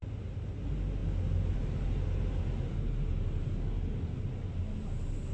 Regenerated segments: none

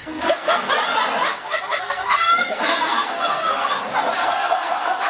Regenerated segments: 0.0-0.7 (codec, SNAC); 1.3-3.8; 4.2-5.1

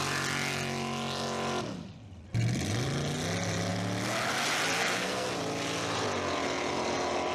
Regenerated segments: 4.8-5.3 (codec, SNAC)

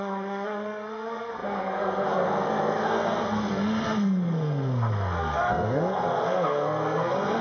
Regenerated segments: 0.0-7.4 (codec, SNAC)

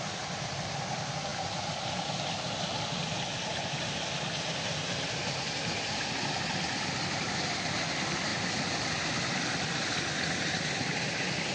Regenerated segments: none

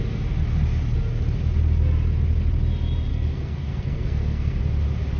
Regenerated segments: 3.1-4.6 (codec, SNAC)

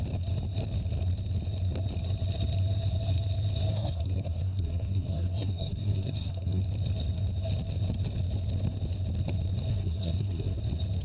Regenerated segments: 3.7-6.6 (codec, SNAC); 9.7-10.6

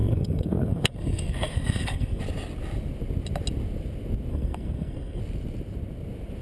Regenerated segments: 0.0-2.2 (codec, SNAC); 4.3-5.2